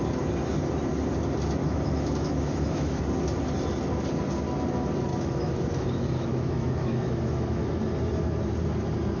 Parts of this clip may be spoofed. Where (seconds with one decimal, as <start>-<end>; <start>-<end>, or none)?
1.6-3.0; 5.1-7.6

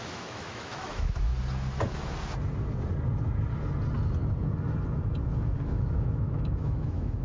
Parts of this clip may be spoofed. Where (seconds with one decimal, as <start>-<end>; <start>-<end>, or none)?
0.0-1.3; 5.6-7.2